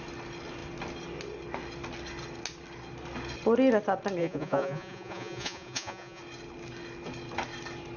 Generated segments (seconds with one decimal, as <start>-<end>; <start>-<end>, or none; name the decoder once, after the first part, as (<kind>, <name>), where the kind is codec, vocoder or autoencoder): 4.2-6.2 (vocoder, Vocos)